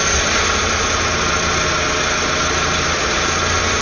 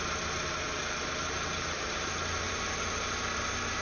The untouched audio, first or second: first